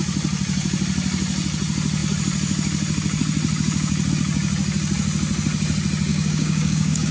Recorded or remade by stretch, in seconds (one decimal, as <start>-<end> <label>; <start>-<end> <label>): 0.0-6.1 recorded; 6.1-7.1 remade